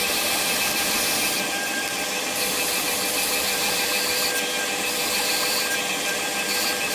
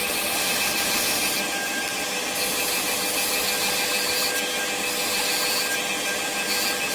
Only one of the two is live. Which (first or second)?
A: second